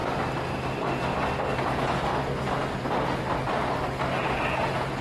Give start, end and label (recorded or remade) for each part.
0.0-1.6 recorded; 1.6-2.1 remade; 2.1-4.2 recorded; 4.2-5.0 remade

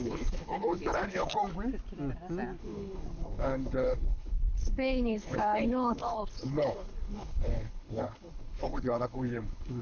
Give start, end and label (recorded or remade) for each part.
0.0-1.3 remade; 1.3-2.6 recorded; 2.6-9.8 remade

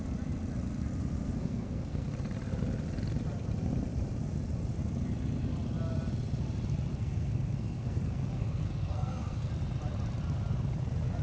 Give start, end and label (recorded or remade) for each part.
0.0-1.4 recorded; 1.4-2.1 remade; 2.1-6.9 recorded; 6.9-9.5 remade; 9.5-11.2 recorded

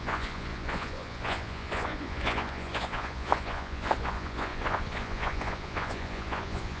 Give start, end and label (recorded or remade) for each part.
0.0-6.8 remade

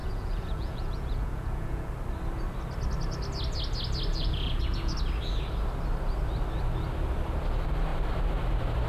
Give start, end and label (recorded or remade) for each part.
0.0-1.9 remade; 1.9-4.1 recorded; 4.1-4.9 remade; 4.9-8.9 recorded

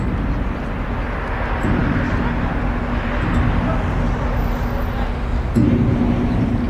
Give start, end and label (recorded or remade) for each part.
0.0-6.7 recorded